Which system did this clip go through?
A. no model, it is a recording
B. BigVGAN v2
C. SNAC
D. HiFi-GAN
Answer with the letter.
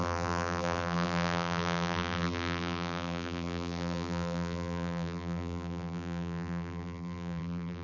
B